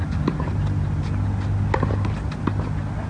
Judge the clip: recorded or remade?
recorded